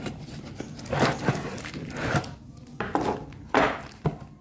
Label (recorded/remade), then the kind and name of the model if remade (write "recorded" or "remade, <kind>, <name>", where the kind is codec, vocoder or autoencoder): recorded